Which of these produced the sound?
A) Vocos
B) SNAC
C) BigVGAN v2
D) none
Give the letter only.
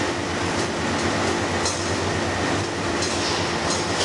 D